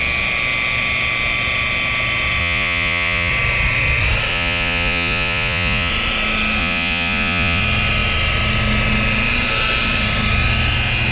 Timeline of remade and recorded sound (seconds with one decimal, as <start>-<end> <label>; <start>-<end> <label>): 0.0-2.4 recorded; 2.4-3.3 remade; 3.3-4.3 recorded; 4.3-5.9 remade; 5.9-6.6 recorded; 6.6-7.6 remade; 7.6-11.1 recorded